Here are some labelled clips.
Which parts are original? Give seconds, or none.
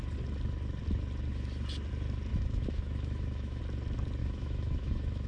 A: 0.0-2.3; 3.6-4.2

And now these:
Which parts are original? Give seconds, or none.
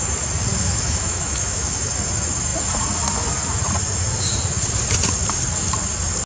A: 0.0-0.5; 1.9-6.3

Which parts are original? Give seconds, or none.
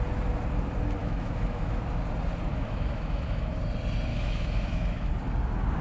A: 0.0-1.0; 1.8-2.5; 3.6-4.1; 5.1-5.8